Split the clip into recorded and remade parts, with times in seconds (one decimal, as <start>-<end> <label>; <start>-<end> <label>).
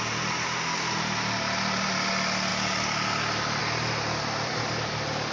0.0-5.3 recorded